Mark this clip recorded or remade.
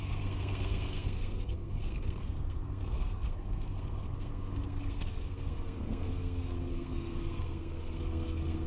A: remade